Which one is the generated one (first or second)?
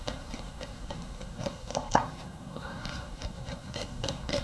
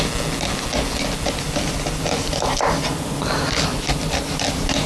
first